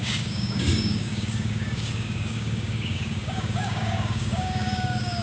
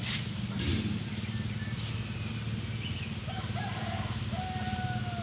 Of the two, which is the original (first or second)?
second